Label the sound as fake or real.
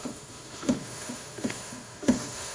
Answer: fake